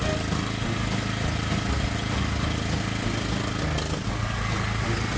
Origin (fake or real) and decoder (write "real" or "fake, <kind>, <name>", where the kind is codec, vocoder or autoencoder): real